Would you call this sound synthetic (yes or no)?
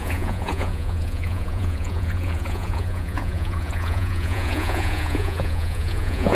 yes